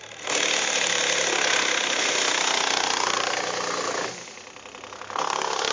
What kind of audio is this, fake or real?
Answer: real